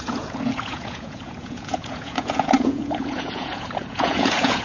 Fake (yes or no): yes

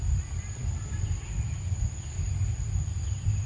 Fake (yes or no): no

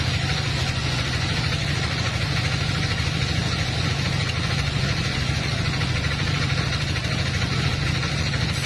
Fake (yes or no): yes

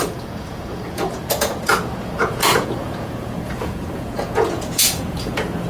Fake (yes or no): yes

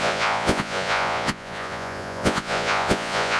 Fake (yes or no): yes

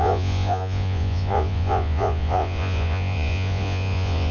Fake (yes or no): yes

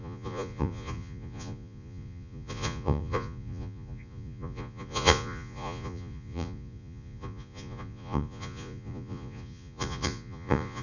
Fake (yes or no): yes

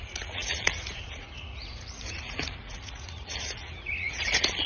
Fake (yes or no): yes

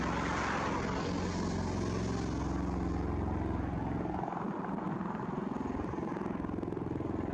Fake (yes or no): no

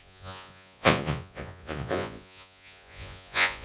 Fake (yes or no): yes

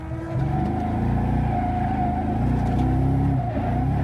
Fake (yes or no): no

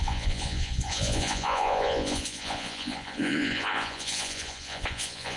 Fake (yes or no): yes